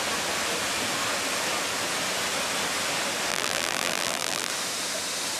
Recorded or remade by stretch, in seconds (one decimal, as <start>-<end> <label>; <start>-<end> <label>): 0.0-3.3 recorded; 3.3-4.5 remade; 4.5-5.4 recorded